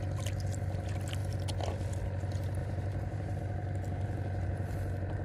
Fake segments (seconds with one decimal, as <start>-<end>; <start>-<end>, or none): 2.6-3.4